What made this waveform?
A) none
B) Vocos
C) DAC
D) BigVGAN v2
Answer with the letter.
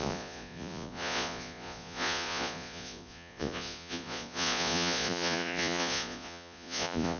B